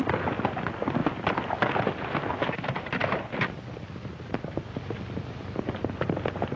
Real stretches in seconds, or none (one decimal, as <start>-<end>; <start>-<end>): 0.0-6.6